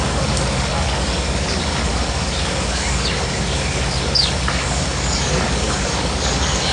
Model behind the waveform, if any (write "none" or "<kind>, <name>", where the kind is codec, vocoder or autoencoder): codec, DAC